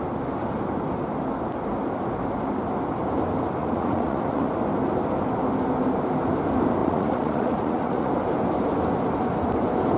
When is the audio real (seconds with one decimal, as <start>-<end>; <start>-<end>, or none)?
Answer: 0.0-3.6; 4.5-6.8; 8.1-10.0